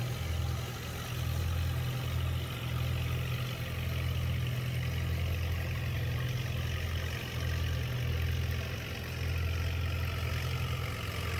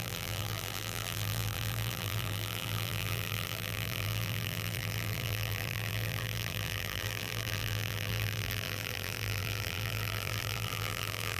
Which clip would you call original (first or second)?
first